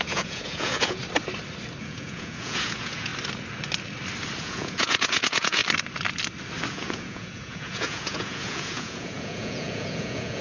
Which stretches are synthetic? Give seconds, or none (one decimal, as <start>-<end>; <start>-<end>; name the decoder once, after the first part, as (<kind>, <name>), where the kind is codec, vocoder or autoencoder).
0.0-1.0 (vocoder, Vocos); 1.8-3.1; 4.4-5.6; 6.7-10.4